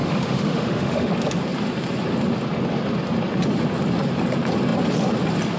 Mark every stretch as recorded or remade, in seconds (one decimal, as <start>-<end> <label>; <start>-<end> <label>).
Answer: 0.0-1.1 remade; 1.1-5.6 recorded